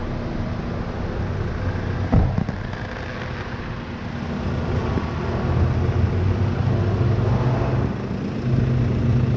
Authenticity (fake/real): real